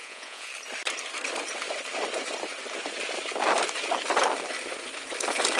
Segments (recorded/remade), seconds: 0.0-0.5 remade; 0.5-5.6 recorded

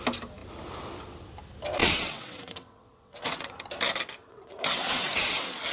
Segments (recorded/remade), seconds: 0.0-1.8 recorded; 1.8-3.5 remade; 3.5-4.2 recorded; 4.2-5.2 remade; 5.2-5.7 recorded

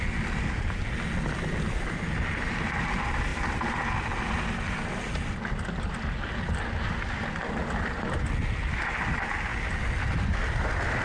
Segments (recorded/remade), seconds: 0.0-11.0 recorded

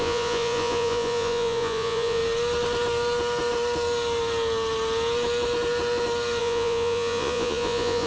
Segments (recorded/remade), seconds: 0.0-2.2 remade; 2.2-6.4 recorded; 6.4-8.1 remade